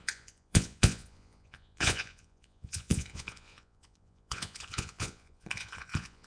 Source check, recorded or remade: remade